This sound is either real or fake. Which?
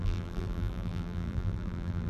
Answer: fake